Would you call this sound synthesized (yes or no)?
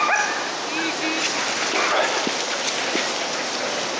no